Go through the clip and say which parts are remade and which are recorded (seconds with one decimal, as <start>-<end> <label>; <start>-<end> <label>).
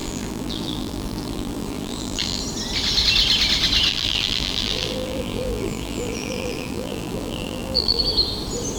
0.0-2.4 remade; 2.4-3.9 recorded; 3.9-8.0 remade; 8.0-8.8 recorded